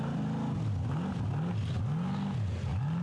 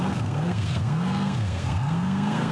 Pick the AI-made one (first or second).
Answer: second